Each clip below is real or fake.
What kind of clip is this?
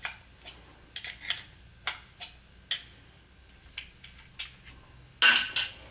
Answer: real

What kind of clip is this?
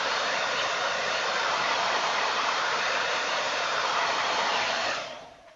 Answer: fake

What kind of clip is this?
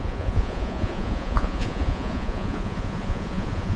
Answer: fake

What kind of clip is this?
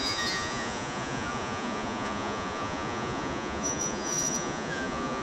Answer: fake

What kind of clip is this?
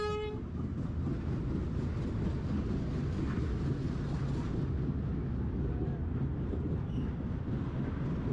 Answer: real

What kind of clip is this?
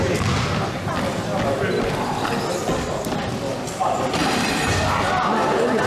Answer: real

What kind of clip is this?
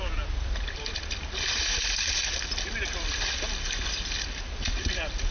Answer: real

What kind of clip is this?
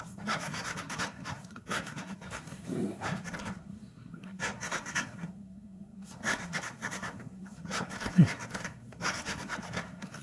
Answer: fake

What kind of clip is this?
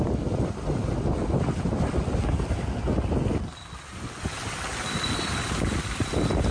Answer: real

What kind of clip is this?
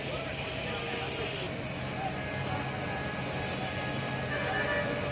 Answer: real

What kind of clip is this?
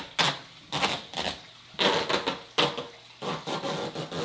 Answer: real